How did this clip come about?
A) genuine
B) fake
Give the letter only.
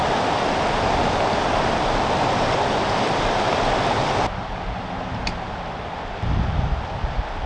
A